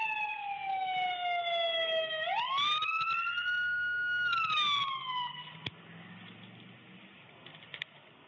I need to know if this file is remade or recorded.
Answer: recorded